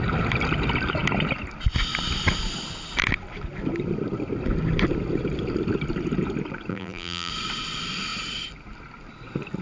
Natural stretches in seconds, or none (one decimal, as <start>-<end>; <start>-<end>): 0.0-6.7; 7.3-9.6